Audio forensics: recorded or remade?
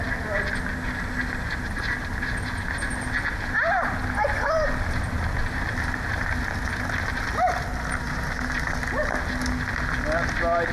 recorded